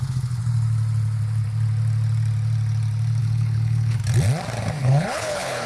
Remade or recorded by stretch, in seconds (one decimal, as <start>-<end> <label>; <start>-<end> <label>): 0.0-0.4 remade; 0.4-3.2 recorded; 3.2-4.0 remade; 4.0-4.8 recorded; 4.8-5.7 remade